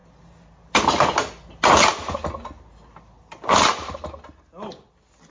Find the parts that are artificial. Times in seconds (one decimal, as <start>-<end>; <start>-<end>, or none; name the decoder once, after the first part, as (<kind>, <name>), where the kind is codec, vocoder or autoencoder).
none